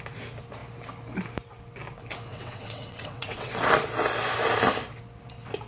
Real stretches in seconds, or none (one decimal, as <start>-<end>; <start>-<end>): 0.0-2.3; 3.6-5.7